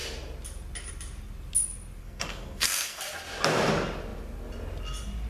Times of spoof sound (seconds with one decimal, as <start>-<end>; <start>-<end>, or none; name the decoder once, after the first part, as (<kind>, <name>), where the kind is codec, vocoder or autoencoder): 2.0-3.0 (codec, SNAC)

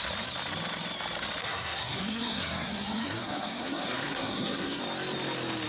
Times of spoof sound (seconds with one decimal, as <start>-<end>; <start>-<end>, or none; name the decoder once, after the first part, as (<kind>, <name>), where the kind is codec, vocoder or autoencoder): 1.4-4.8 (codec, SNAC)

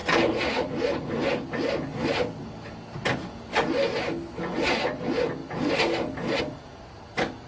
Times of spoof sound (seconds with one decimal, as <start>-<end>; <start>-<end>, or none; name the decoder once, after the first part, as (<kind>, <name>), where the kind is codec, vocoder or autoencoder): none

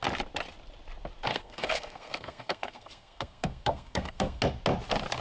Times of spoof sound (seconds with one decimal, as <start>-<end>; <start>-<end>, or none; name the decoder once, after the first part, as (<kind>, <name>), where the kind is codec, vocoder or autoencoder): 1.3-4.4 (codec, SNAC)